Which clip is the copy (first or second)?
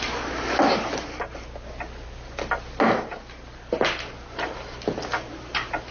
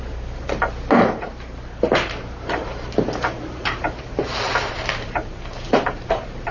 second